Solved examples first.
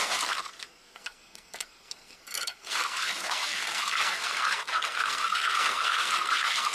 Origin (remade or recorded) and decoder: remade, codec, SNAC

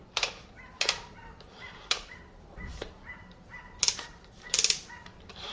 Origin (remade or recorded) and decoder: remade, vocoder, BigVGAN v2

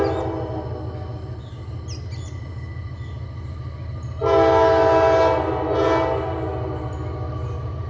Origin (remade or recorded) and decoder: recorded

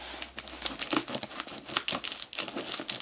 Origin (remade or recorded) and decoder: recorded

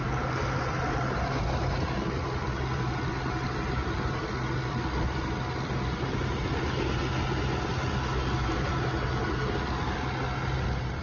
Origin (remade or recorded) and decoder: recorded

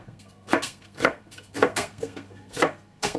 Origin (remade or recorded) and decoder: remade, codec, SNAC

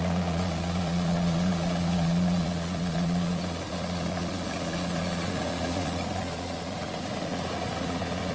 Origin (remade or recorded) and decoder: remade, vocoder, Vocos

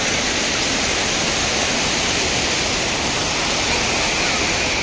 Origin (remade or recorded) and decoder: recorded